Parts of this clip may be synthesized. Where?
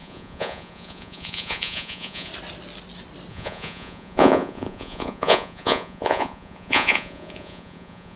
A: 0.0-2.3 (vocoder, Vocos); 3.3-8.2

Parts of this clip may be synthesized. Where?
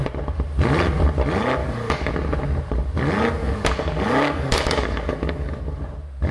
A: 1.6-2.1 (codec, DAC); 3.4-5.6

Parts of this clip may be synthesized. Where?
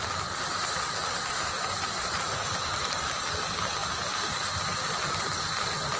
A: none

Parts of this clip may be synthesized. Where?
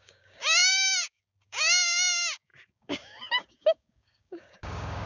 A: 0.0-5.1 (codec, DAC)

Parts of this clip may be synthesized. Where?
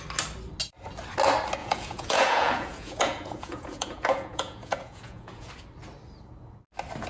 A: 1.6-5.5 (vocoder, Vocos)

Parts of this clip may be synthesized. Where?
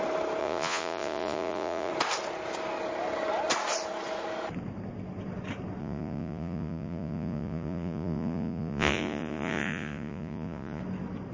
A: 0.4-1.9 (vocoder, Vocos); 5.8-10.8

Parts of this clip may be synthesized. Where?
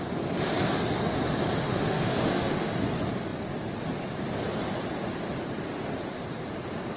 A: 1.6-2.7 (autoencoder, DAC-VAE)